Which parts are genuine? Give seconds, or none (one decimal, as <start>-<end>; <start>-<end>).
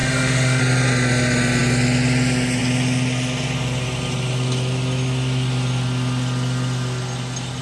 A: 0.6-7.6